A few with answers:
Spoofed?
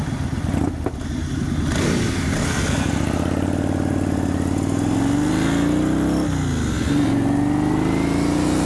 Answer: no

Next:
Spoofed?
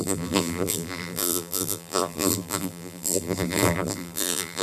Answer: yes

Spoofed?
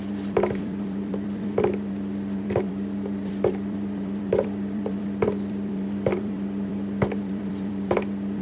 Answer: yes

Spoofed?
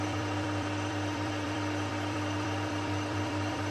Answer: yes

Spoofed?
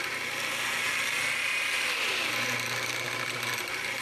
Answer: no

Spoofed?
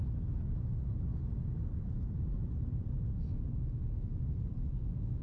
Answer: no